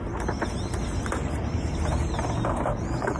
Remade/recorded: recorded